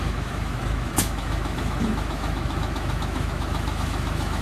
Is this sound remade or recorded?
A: remade